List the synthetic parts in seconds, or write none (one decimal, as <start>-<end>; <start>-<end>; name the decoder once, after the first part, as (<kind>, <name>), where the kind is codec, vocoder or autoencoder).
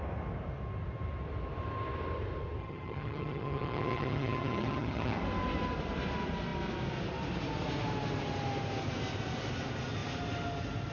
2.6-5.2 (vocoder, HiFi-GAN)